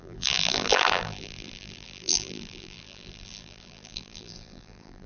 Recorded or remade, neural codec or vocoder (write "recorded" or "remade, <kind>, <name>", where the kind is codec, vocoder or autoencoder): remade, vocoder, BigVGAN v2